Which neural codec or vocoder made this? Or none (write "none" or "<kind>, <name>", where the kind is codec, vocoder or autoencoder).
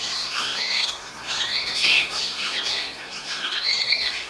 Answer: codec, SNAC